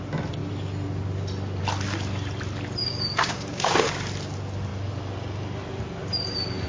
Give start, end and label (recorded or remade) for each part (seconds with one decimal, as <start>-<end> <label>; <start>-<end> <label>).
0.0-2.8 recorded; 2.8-3.9 remade; 3.9-6.7 recorded